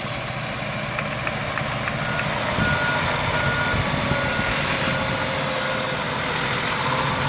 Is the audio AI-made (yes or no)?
no